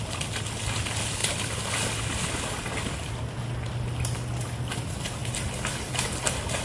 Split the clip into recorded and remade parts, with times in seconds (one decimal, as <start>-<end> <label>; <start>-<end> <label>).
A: 0.0-6.6 recorded